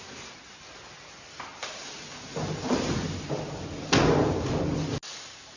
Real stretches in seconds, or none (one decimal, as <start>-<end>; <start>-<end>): 0.0-5.6